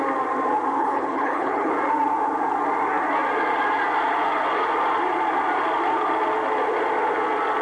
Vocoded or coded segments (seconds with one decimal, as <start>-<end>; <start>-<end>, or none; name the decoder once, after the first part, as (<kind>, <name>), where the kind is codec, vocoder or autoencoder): 0.8-1.7 (codec, HILCodec)